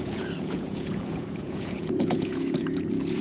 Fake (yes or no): yes